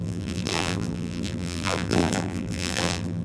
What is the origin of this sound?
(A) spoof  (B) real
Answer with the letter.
A